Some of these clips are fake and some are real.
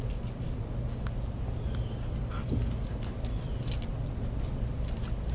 real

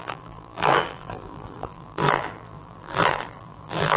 fake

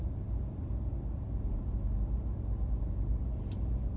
real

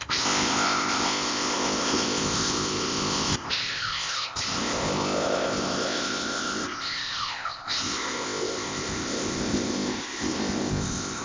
fake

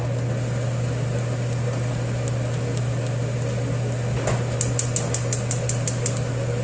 real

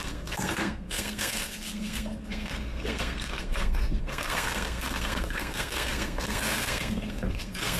fake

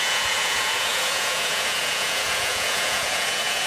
fake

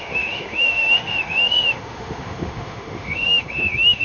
fake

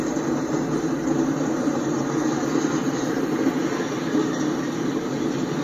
real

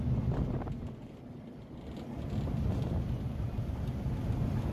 real